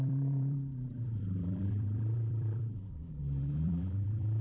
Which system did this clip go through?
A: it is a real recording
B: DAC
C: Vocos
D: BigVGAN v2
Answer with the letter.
D